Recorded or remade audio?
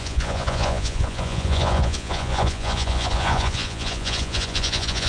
remade